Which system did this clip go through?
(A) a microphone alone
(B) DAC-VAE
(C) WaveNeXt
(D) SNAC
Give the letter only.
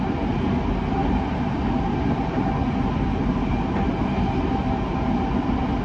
A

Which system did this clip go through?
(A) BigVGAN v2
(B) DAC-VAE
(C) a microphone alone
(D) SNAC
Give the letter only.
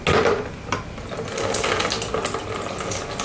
C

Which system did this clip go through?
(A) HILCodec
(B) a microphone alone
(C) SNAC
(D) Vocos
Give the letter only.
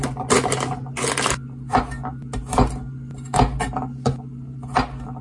B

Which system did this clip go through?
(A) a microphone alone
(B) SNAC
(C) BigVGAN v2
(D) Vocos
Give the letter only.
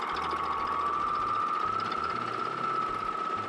A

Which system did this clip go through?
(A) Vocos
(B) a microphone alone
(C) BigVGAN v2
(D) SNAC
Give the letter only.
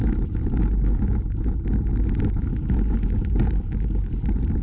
B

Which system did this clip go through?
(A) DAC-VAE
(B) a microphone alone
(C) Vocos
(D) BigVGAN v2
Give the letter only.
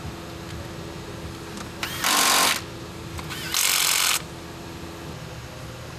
B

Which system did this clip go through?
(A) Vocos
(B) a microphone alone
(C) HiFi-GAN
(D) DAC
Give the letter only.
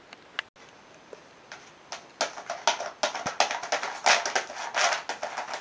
B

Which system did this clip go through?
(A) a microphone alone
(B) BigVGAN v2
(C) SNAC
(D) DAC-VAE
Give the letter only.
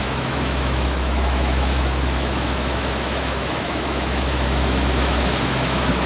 D